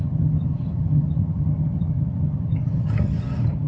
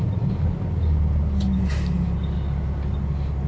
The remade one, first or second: first